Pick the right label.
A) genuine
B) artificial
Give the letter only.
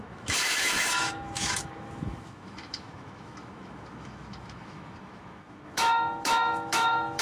B